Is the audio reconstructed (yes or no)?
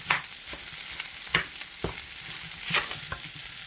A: no